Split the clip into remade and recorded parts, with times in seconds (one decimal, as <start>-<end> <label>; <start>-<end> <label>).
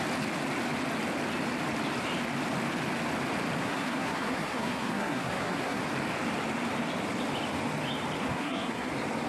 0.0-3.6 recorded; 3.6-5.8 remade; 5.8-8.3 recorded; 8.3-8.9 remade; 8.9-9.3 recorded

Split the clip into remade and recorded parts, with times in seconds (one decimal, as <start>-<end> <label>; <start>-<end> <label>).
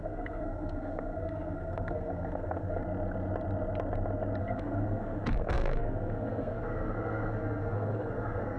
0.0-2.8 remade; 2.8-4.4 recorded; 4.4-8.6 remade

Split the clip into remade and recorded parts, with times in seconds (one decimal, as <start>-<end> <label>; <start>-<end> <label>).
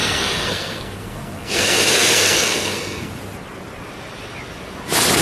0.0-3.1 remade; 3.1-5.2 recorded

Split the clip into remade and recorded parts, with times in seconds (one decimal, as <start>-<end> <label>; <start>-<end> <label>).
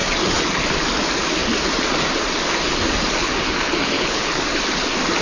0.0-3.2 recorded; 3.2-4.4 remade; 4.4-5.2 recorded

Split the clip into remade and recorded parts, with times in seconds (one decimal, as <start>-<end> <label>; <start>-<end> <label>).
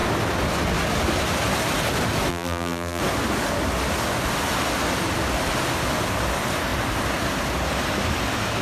0.0-2.3 recorded; 2.3-3.0 remade; 3.0-8.6 recorded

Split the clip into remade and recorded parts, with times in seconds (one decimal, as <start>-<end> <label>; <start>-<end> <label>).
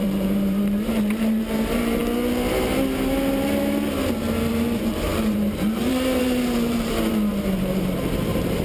0.0-2.0 remade; 2.0-4.5 recorded; 4.5-8.6 remade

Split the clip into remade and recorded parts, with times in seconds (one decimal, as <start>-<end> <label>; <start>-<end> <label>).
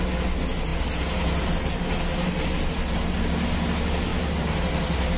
0.0-4.1 recorded; 4.1-5.2 remade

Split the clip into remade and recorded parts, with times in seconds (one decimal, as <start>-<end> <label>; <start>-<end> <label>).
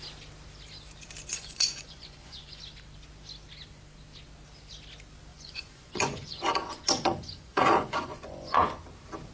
0.0-1.3 recorded; 1.3-2.6 remade; 2.6-5.3 recorded; 5.3-8.8 remade; 8.8-9.3 recorded